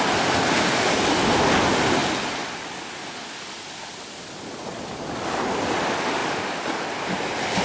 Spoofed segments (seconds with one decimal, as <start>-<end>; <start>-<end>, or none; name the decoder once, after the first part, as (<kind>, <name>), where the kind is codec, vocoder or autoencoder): none